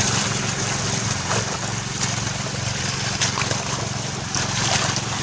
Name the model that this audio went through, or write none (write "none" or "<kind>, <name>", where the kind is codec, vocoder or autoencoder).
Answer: none